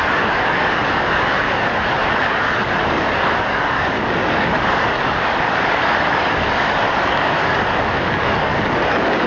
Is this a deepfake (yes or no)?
yes